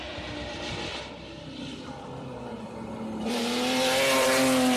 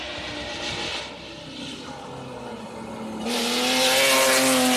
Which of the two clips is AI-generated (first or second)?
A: first